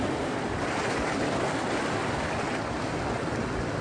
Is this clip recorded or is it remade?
recorded